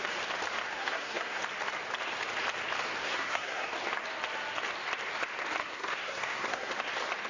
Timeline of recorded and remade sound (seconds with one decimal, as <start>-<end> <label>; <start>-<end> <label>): 0.0-0.7 recorded; 0.7-1.4 remade; 1.4-3.0 recorded; 3.0-3.7 remade; 3.7-5.6 recorded; 5.6-6.7 remade; 6.7-7.3 recorded